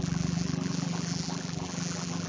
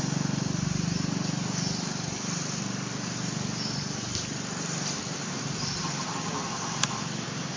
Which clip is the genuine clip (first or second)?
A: second